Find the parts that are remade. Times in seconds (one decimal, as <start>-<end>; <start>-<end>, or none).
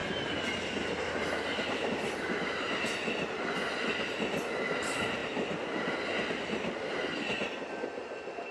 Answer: none